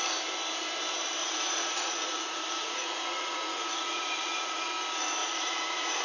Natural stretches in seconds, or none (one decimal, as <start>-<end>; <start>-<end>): 0.0-1.2; 4.7-5.2